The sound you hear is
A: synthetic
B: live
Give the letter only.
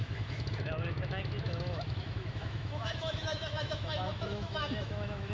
A